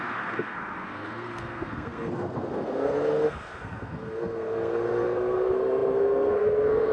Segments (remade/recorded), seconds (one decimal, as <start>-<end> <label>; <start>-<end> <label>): 0.0-6.9 remade